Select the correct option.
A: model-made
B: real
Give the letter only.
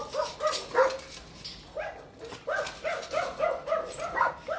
B